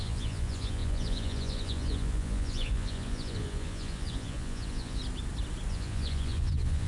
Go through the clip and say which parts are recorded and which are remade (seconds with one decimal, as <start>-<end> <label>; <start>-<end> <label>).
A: 0.0-5.0 remade; 5.0-5.7 recorded; 5.7-6.9 remade